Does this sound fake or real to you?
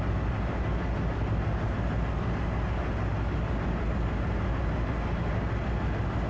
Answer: real